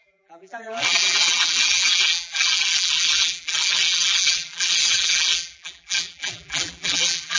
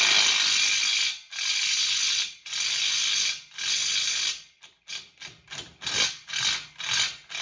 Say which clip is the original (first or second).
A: second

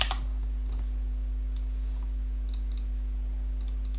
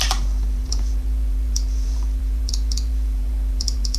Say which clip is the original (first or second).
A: first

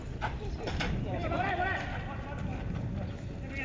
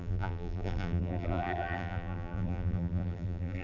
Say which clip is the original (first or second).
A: first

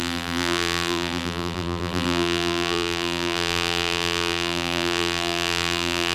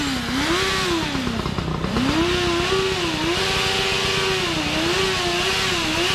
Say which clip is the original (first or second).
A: second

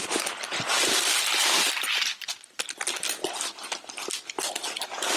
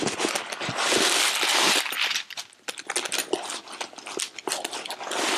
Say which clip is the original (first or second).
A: second